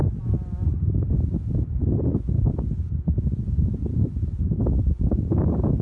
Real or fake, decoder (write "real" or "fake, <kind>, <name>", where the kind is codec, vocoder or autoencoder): real